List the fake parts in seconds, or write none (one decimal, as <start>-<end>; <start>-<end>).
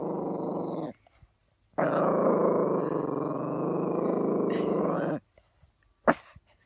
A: none